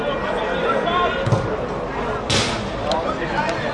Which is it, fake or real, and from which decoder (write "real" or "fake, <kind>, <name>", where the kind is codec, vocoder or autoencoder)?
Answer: real